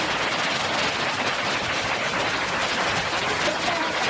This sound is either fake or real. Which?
real